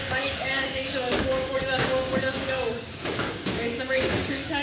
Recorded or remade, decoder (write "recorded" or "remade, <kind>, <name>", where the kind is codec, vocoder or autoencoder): remade, codec, DAC